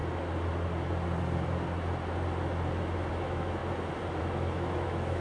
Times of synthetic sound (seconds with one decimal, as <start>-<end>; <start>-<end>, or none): 3.1-3.6; 4.2-5.2